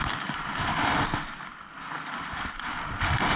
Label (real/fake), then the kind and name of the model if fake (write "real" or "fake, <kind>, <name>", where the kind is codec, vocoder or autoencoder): fake, vocoder, BigVGAN v2